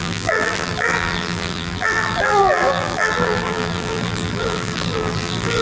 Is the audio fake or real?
fake